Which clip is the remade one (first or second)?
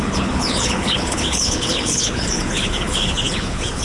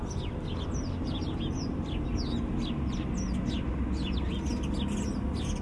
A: first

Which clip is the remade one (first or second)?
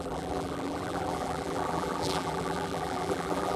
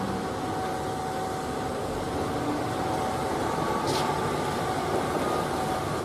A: first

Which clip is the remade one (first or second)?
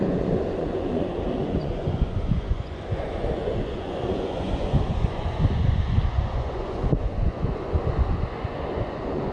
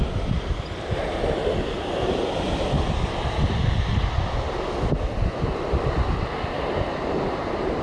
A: first